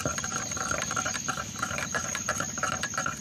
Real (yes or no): yes